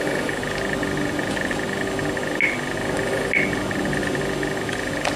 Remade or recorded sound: recorded